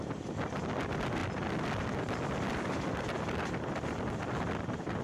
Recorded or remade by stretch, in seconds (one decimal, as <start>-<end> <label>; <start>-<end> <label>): 0.0-5.0 recorded